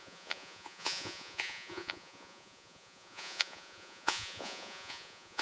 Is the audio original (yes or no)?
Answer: no